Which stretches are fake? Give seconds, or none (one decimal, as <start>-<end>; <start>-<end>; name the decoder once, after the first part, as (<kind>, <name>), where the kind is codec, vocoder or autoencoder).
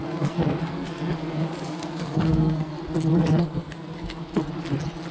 0.0-2.7 (codec, SNAC); 3.1-4.2